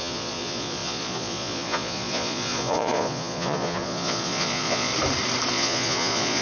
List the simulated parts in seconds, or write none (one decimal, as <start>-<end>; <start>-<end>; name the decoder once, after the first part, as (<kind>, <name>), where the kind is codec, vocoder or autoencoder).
0.0-4.9 (vocoder, Vocos); 5.5-6.4